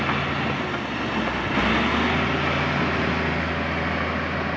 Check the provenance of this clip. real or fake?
real